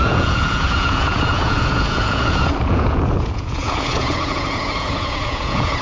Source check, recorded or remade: remade